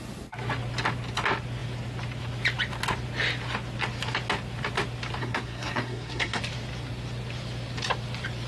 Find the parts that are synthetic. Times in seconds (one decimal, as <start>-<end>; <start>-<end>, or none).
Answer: 5.2-6.4